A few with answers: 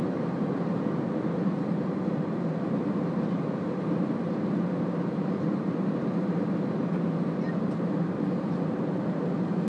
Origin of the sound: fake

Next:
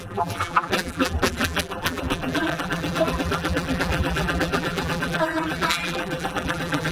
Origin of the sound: fake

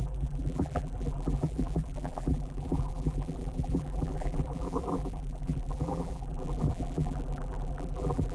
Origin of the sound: fake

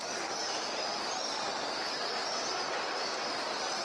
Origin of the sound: fake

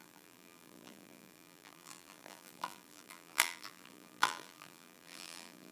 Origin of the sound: fake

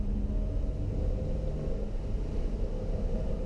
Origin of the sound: real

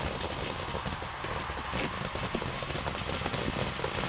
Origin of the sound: real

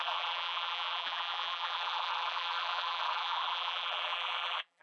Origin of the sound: fake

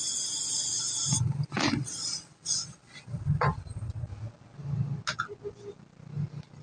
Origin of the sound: real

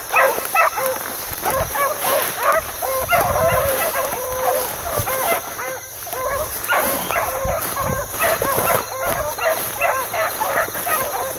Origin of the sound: fake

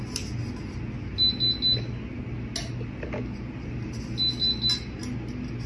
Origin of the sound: real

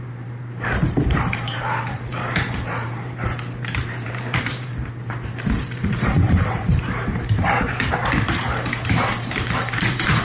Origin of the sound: fake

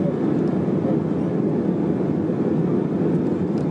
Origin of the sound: real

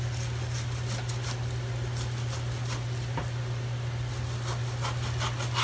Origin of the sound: real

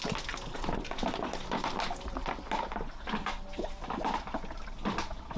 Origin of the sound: real